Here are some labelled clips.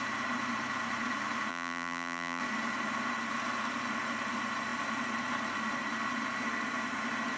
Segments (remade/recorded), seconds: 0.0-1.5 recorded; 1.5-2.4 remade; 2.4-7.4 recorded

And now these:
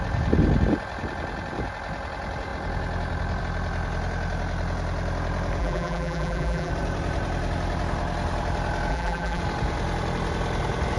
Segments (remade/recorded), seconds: 0.0-5.6 recorded; 5.6-6.7 remade; 6.7-8.9 recorded; 8.9-9.4 remade; 9.4-11.0 recorded

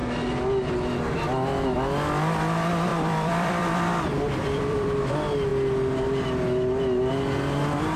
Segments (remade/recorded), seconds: 0.0-2.9 recorded; 2.9-5.0 remade; 5.0-8.0 recorded

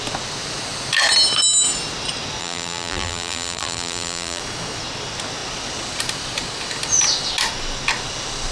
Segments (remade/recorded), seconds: 0.0-2.4 recorded; 2.4-4.4 remade; 4.4-8.5 recorded

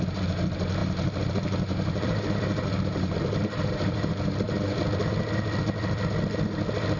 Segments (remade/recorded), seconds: 0.0-0.8 recorded; 0.8-4.8 remade; 4.8-7.0 recorded